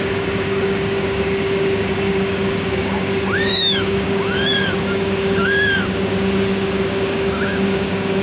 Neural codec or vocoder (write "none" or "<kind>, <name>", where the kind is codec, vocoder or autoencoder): codec, DAC